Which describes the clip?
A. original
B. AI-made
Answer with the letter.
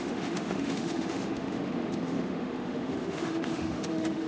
B